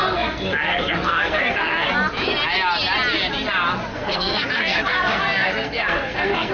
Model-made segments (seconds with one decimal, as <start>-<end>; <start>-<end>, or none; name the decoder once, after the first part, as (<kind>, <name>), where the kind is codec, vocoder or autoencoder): 0.0-1.9 (codec, SNAC); 3.9-6.5